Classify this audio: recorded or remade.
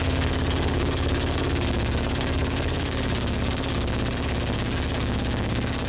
remade